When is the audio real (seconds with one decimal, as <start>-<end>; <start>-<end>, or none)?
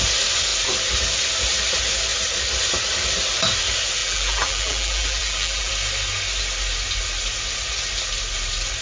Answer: 0.0-4.0; 5.7-8.8